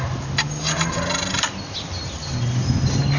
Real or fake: real